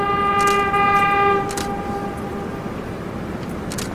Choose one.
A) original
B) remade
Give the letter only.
A